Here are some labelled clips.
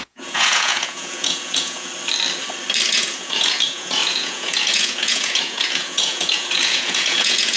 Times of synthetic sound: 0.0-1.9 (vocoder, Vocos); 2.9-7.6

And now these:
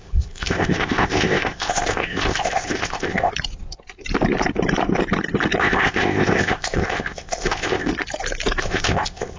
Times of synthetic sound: 0.0-3.3 (codec, ZipCodec); 5.6-7.9; 8.6-9.4

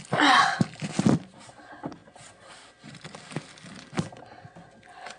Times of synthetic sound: none

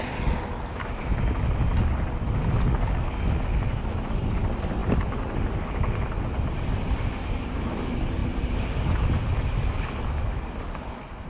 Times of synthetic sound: none

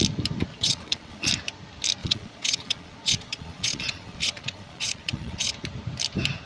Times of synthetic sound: 0.5-1.3 (vocoder, Vocos); 2.0-5.5

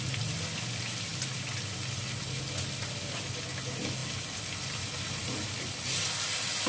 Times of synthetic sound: none